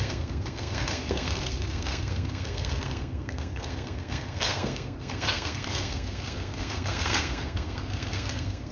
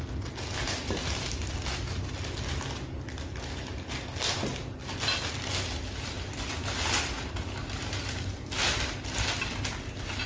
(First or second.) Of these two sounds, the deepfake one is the first